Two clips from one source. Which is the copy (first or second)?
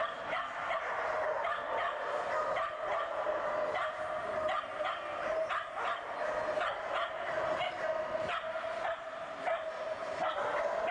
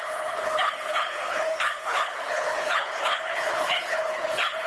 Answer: second